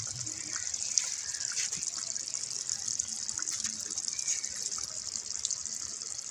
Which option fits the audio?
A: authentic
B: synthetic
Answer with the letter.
B